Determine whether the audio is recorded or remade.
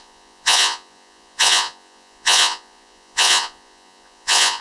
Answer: remade